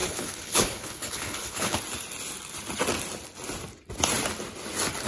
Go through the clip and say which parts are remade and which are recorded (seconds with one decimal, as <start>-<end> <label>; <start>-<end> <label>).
0.0-1.8 remade; 1.8-5.1 recorded